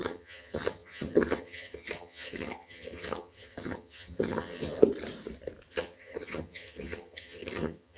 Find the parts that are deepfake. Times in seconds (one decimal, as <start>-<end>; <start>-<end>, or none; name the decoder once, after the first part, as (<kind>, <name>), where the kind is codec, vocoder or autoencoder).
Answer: 0.0-4.8 (vocoder, HiFi-GAN); 5.7-8.0